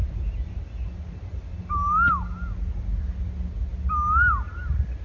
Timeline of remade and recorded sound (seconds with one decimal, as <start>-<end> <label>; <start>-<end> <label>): 0.0-5.0 recorded